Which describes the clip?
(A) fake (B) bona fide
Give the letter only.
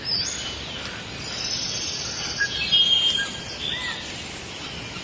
B